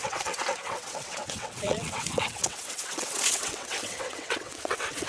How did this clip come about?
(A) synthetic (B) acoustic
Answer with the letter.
A